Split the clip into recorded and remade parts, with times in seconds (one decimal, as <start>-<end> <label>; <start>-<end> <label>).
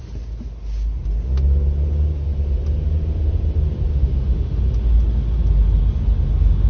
0.0-3.9 recorded; 3.9-4.6 remade; 4.6-6.7 recorded